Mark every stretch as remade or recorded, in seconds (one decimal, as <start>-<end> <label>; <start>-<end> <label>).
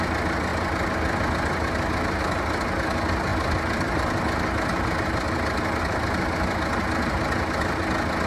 0.0-8.3 recorded